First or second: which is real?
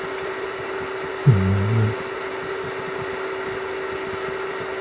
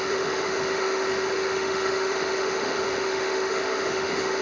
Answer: first